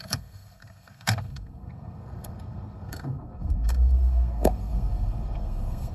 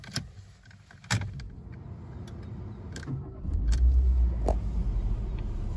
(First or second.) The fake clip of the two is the first